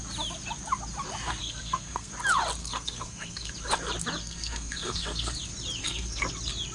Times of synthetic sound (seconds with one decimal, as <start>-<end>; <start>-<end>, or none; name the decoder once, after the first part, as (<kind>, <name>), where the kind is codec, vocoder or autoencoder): 1.4-2.1 (codec, SNAC); 2.6-3.5; 4.2-5.3; 5.8-6.3